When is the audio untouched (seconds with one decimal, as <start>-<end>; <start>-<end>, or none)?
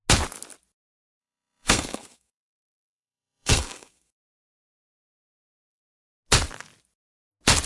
0.0-1.2; 5.8-7.7